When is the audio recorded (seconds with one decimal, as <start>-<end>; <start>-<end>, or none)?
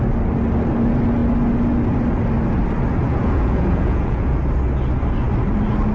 0.0-3.0; 4.4-5.9